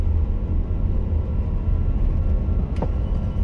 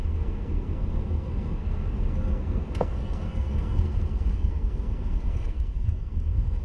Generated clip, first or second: second